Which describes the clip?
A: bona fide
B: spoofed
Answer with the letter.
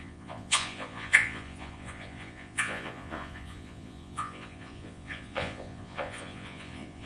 B